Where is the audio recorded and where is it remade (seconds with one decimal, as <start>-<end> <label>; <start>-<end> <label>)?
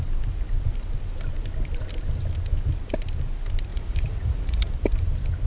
0.0-3.7 recorded; 3.7-4.7 remade; 4.7-5.5 recorded